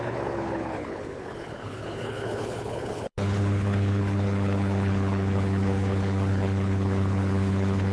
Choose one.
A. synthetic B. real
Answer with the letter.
A